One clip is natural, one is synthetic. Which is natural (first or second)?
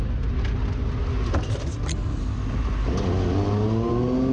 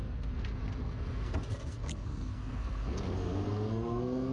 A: first